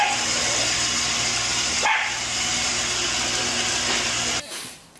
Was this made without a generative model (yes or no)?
yes